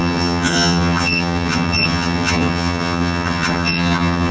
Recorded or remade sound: remade